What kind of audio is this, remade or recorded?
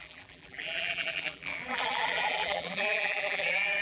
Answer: remade